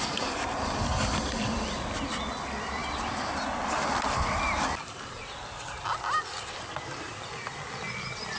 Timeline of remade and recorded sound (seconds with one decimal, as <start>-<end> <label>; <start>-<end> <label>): 0.0-8.4 recorded